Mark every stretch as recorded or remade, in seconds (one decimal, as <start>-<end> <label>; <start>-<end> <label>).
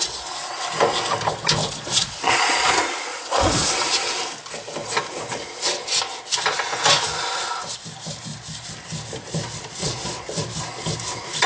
0.0-1.6 recorded; 1.6-2.7 remade; 2.7-3.1 recorded; 3.1-3.7 remade; 3.7-9.8 recorded; 9.8-10.4 remade; 10.4-11.5 recorded